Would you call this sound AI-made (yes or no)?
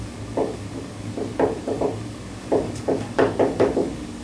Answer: yes